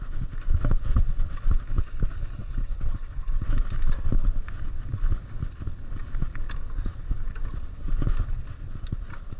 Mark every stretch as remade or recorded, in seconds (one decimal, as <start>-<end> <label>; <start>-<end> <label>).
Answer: 0.0-0.9 recorded; 0.9-1.5 remade; 1.5-2.4 recorded; 2.4-3.4 remade; 3.4-9.4 recorded